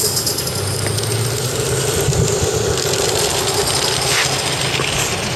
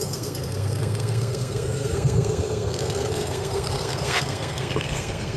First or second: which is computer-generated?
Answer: second